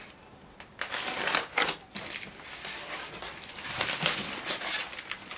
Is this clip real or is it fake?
real